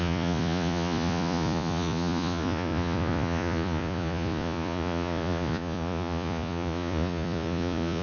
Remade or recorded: remade